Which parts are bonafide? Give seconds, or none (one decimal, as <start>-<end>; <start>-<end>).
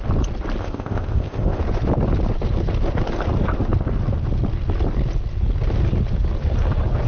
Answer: 0.0-0.6; 1.6-7.1